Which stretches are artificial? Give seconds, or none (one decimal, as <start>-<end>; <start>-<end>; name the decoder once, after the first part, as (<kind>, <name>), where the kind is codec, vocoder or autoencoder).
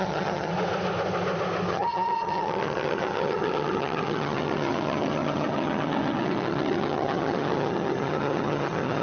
0.0-0.5 (vocoder, HiFi-GAN); 1.7-9.0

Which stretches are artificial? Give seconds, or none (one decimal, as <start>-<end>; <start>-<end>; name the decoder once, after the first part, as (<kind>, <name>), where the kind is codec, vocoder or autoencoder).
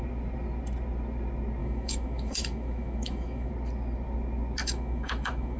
1.6-3.5 (autoencoder, DAC-VAE); 4.6-5.6